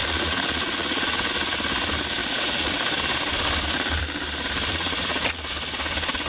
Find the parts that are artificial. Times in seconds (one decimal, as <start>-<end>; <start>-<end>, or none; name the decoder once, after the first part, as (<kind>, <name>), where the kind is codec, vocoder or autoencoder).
0.0-1.3 (vocoder, Vocos); 2.2-2.7; 4.7-5.4